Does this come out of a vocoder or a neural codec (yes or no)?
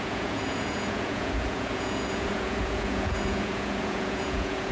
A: yes